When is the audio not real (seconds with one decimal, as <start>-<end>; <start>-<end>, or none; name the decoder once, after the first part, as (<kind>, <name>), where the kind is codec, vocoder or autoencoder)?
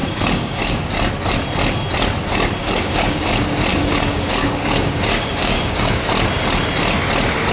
0.0-1.1 (codec, DAC); 2.6-3.3; 3.7-6.0